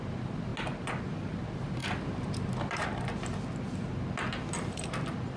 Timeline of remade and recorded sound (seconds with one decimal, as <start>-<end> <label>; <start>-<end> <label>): 0.0-5.4 recorded